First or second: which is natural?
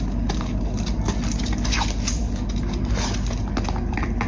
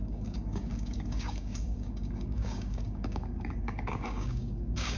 first